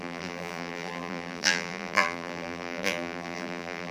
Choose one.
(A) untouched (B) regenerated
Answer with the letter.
B